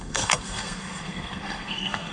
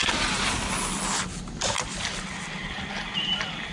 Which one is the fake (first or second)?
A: first